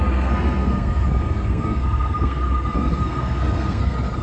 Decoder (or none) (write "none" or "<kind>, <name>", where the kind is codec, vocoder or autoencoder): codec, SNAC